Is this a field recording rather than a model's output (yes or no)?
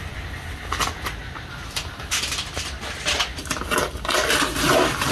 yes